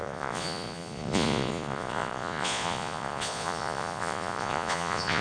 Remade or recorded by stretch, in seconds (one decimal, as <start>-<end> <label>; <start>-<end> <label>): 0.0-5.2 remade